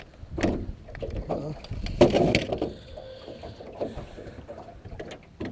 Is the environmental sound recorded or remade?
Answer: recorded